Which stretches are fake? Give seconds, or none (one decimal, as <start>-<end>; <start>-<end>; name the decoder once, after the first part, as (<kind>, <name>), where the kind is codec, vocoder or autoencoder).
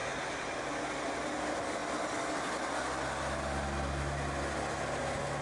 none